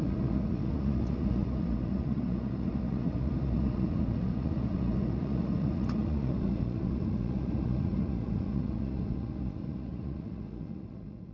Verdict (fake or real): fake